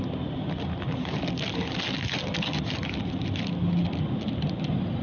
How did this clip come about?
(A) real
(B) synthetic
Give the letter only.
A